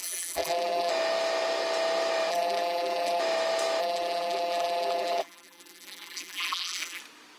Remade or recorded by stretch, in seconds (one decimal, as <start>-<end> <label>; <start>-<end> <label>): 0.0-0.9 remade; 0.9-2.3 recorded; 2.3-3.2 remade; 3.2-3.8 recorded; 3.8-7.0 remade; 7.0-7.4 recorded